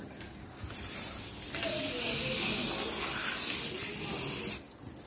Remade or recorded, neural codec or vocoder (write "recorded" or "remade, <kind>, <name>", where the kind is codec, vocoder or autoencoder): remade, vocoder, BigVGAN v2